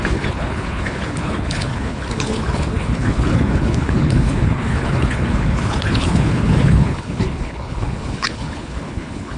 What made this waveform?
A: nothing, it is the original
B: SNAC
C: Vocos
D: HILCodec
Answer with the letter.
D